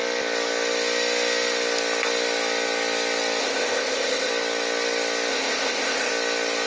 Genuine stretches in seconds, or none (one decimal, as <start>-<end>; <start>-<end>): 0.0-3.4; 4.3-5.3; 6.1-6.7